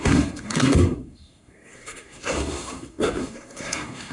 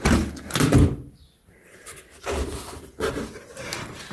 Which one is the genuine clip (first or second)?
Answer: second